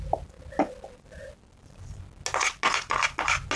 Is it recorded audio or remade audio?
recorded